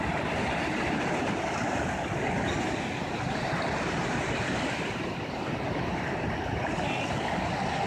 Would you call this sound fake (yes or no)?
no